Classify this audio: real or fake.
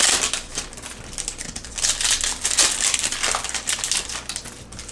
fake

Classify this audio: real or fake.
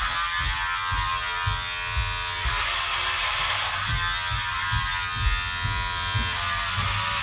real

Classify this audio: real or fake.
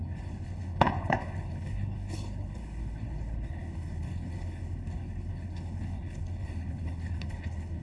fake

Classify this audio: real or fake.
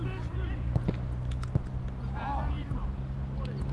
real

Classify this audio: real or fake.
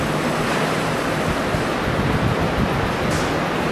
real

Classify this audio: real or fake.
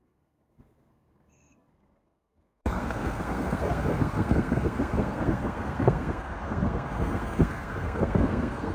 fake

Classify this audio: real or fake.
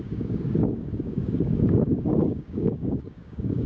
fake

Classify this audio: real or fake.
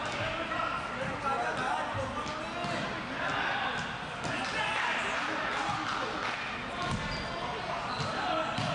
real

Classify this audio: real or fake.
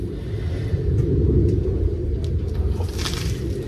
real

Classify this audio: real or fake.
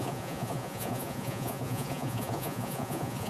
fake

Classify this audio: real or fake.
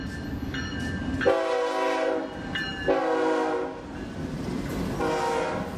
real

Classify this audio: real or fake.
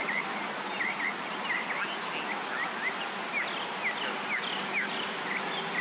real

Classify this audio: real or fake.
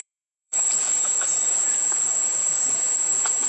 fake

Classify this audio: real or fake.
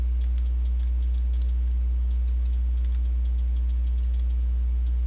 real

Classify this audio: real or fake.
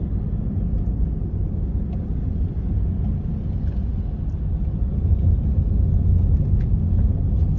real